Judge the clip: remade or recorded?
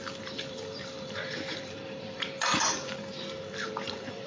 remade